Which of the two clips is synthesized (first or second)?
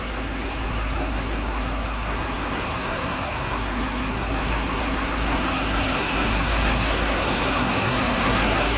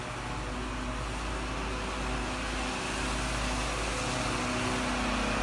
first